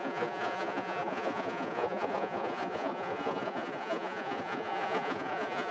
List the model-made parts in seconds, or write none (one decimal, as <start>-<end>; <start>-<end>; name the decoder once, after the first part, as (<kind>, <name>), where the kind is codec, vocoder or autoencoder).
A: 0.0-5.7 (vocoder, Vocos)